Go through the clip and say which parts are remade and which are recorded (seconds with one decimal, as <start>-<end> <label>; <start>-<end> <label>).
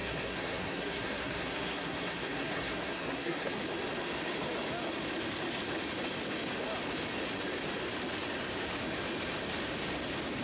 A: 0.0-3.5 remade; 3.5-10.4 recorded